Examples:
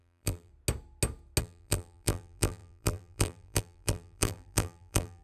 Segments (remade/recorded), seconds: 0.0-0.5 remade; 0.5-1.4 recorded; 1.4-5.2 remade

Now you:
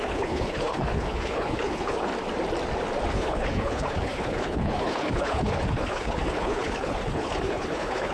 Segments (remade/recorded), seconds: 0.0-2.1 remade; 2.1-3.1 recorded; 3.1-8.1 remade

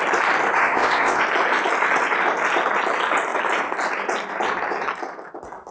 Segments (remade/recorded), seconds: 0.0-0.6 recorded; 0.6-1.2 remade; 1.2-5.7 recorded